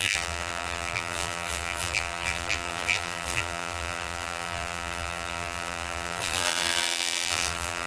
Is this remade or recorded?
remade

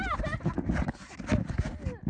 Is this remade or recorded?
recorded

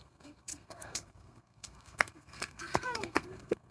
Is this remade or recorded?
remade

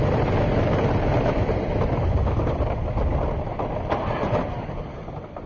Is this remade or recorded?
recorded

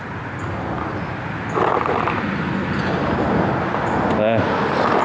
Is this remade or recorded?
recorded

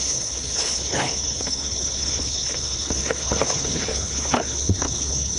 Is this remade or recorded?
remade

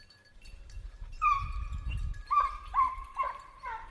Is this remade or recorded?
remade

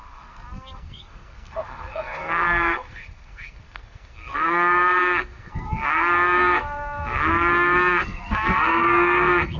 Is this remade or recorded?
remade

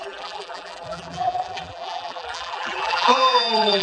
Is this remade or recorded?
remade